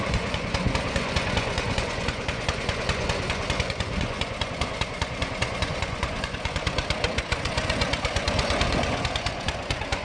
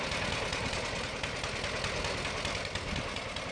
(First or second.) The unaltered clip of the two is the second